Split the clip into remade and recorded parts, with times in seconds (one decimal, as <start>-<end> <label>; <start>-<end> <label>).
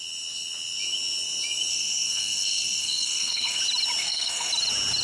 0.0-1.7 recorded; 1.7-3.6 remade; 3.6-4.0 recorded; 4.0-4.5 remade; 4.5-5.0 recorded